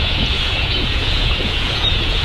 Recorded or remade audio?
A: remade